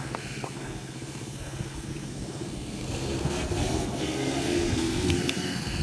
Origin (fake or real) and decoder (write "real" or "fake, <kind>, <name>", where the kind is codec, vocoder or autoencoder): fake, codec, SNAC